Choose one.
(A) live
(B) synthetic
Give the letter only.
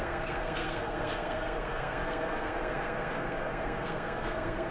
B